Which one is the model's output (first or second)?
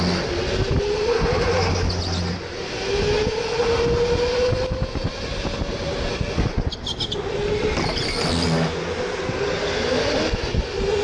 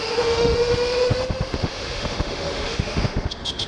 second